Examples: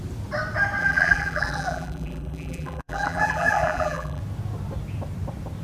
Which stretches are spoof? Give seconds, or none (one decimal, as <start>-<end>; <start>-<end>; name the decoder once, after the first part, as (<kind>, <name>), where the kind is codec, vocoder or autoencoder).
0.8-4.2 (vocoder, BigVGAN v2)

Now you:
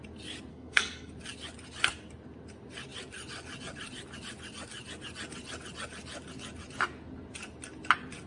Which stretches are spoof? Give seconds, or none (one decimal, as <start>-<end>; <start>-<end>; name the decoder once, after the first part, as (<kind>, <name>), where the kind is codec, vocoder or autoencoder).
0.5-1.1 (codec, SNAC)

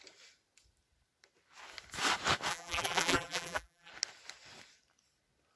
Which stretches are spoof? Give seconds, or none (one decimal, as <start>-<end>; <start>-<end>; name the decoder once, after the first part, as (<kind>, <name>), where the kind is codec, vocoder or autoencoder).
2.5-3.9 (vocoder, BigVGAN v2)

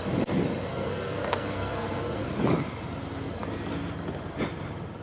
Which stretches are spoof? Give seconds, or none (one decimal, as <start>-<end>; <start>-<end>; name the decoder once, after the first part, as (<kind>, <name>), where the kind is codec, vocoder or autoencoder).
0.7-2.2 (codec, SNAC)

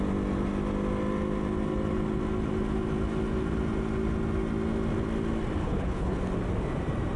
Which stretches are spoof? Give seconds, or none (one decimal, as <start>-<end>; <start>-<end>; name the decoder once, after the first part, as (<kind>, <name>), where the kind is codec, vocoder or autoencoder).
5.6-6.2 (codec, HILCodec)

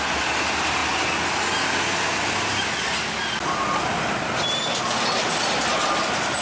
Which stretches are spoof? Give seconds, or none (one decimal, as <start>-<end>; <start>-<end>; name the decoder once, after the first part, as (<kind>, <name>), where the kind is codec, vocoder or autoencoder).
none

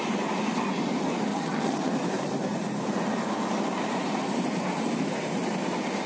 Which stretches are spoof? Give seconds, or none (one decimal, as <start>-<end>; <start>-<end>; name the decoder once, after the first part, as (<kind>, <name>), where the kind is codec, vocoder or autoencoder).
1.3-1.9 (vocoder, HiFi-GAN)